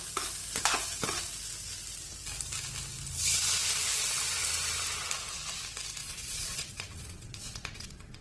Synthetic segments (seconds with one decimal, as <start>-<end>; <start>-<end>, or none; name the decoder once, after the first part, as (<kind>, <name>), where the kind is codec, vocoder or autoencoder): 6.0-8.2 (vocoder, Vocos)